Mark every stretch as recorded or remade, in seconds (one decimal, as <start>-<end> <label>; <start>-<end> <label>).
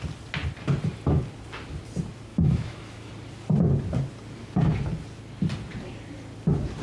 0.0-2.3 recorded; 2.3-3.1 remade; 3.1-6.8 recorded